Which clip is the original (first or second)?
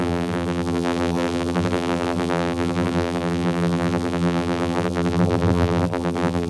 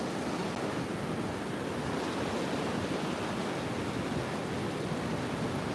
second